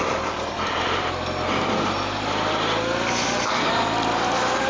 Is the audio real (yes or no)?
yes